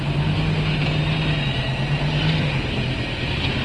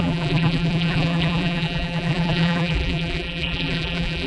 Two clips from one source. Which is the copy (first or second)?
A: second